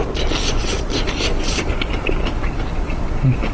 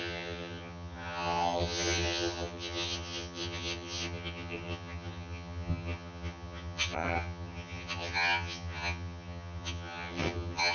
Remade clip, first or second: second